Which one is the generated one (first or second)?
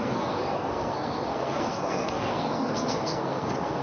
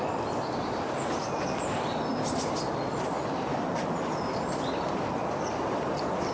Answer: first